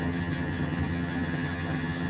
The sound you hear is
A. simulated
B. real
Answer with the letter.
A